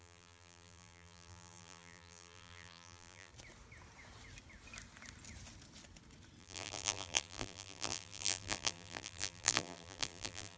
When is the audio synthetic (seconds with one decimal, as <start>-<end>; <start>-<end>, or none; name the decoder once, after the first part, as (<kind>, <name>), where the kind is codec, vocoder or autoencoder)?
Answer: 0.0-3.3 (vocoder, BigVGAN v2); 6.4-10.6